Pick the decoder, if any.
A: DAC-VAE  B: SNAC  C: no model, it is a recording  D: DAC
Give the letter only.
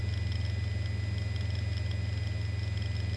C